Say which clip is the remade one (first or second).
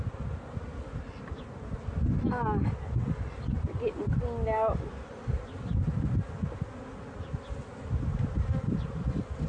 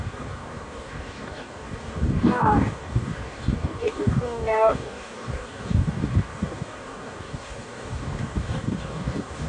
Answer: second